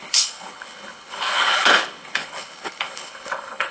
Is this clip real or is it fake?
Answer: fake